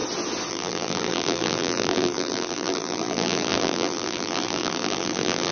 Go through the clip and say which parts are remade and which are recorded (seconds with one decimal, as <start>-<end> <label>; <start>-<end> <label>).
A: 0.0-0.5 recorded; 0.5-5.5 remade